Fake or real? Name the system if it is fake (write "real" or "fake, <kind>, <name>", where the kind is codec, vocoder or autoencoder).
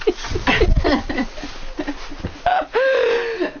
real